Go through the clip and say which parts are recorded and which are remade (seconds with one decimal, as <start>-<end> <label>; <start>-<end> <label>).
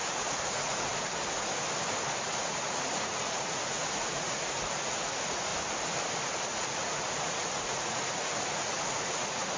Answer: 0.0-0.9 remade; 0.9-2.2 recorded; 2.2-5.5 remade; 5.5-6.5 recorded; 6.5-9.6 remade